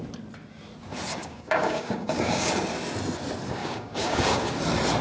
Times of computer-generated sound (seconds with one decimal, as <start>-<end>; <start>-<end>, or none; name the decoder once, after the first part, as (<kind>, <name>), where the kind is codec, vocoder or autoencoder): 1.2-2.5 (codec, DAC); 3.6-4.5